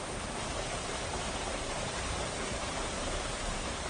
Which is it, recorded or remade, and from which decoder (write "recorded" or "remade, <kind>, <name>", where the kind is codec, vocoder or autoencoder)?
remade, vocoder, BigVGAN v2